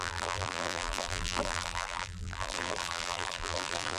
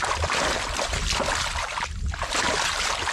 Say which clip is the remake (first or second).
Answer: first